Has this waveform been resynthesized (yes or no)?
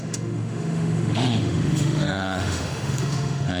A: yes